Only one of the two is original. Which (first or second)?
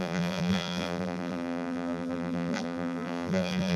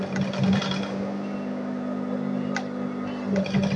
second